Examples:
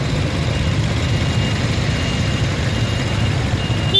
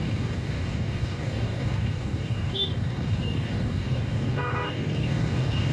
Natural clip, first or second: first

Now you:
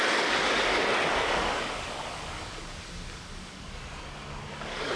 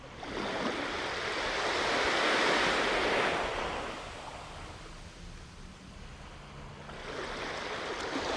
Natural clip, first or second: second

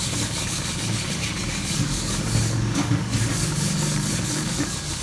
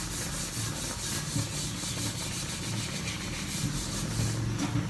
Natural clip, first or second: second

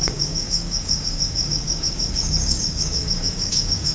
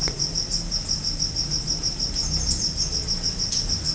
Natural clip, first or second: second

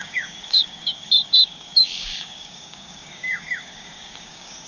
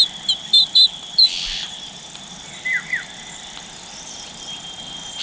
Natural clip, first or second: second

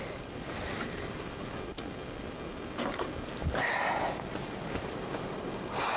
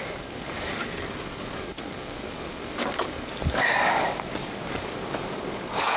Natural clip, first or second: first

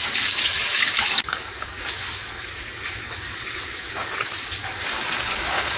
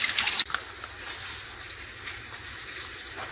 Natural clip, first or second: second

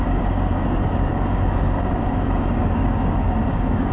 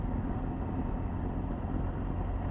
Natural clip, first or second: second